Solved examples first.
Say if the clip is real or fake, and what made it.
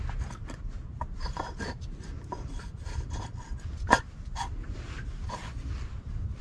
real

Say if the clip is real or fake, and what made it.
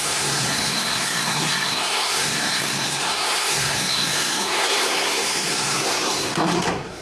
fake, codec, SNAC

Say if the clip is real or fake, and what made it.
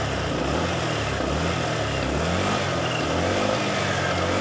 real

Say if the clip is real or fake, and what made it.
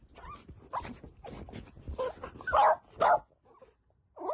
real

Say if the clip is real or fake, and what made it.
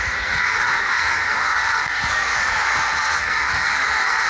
fake, codec, SNAC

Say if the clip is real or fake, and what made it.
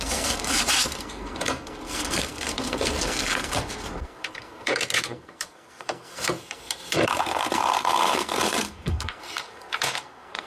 fake, codec, SNAC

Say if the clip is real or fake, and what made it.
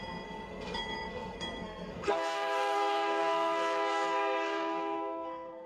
fake, codec, SNAC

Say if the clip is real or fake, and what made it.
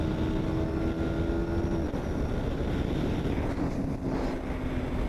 real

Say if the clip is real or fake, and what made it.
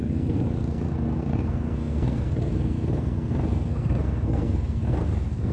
fake, codec, SNAC